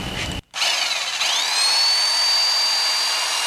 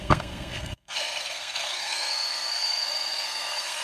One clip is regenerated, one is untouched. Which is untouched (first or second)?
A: first